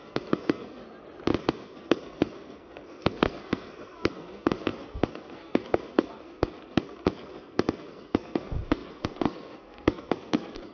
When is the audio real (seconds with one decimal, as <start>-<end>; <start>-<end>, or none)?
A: 0.8-1.4